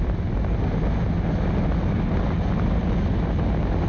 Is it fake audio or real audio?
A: real